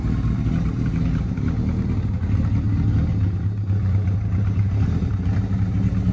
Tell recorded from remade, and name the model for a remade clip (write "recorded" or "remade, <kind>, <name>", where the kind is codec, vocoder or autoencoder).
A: recorded